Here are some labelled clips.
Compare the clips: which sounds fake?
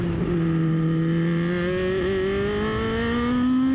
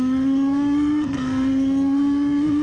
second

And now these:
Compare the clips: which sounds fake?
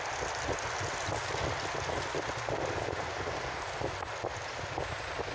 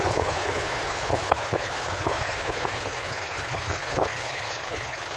second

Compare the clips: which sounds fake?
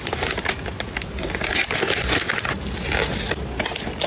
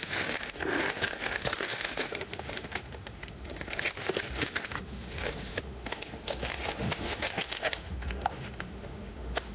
second